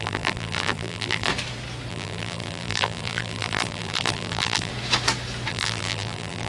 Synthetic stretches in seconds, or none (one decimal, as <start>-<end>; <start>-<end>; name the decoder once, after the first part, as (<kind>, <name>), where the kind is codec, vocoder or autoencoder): 0.0-1.3 (vocoder, BigVGAN v2); 1.9-4.7; 5.5-6.5